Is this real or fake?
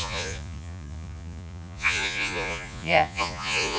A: fake